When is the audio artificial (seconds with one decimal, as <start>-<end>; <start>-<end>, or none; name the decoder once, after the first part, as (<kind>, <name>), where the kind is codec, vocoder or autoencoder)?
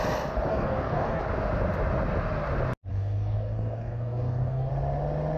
0.5-1.2 (codec, DAC); 2.9-4.7